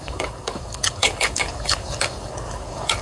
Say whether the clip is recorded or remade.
remade